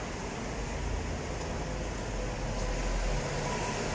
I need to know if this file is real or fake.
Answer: real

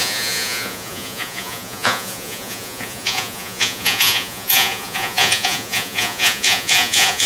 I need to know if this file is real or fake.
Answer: fake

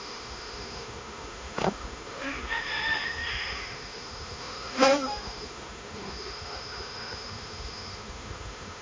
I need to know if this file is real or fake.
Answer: fake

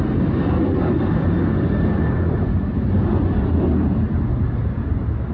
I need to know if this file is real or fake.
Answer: real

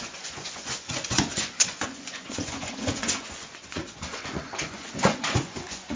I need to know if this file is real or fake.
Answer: fake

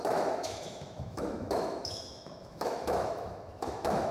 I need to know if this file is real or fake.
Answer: fake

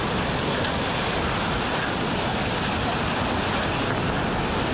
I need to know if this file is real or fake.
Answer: real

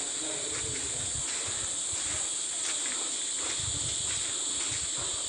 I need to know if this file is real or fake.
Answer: real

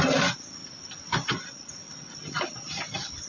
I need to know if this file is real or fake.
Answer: real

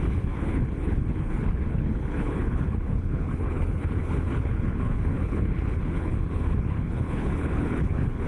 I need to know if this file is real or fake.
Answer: fake